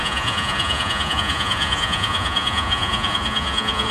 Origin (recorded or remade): remade